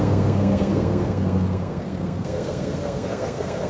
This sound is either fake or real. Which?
fake